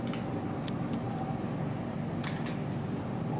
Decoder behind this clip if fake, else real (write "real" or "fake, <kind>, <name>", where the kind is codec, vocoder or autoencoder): real